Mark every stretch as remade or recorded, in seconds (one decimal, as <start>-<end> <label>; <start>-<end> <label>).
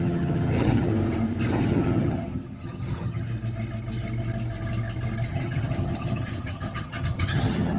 0.0-0.9 remade; 0.9-1.5 recorded; 1.5-3.3 remade; 3.3-5.3 recorded; 5.3-7.8 remade